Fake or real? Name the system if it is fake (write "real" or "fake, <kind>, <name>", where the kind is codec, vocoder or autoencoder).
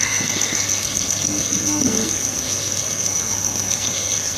fake, codec, SNAC